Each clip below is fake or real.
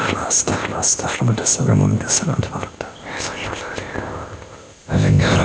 fake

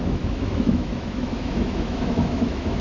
fake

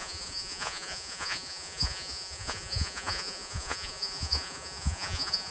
fake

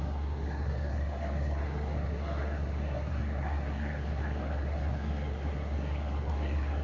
fake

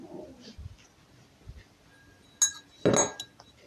real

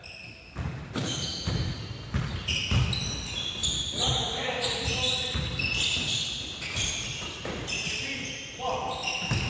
real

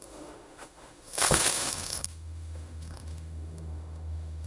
fake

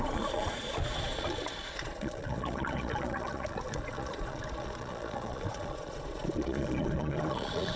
fake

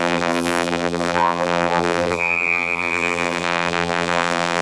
fake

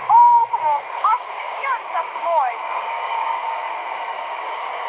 fake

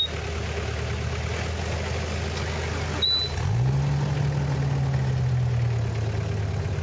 real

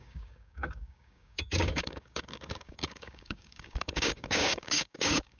fake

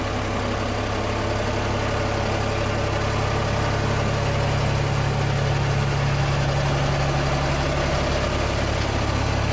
real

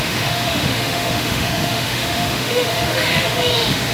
fake